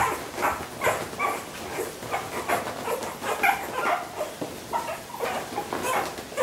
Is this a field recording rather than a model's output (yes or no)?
yes